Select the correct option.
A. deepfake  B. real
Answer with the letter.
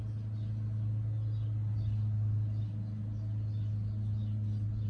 B